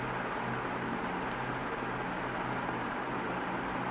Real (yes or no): yes